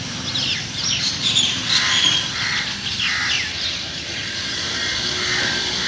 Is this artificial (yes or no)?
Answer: no